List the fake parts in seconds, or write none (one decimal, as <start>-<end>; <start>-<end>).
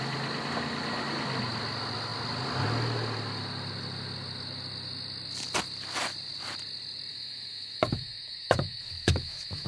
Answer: 7.1-9.7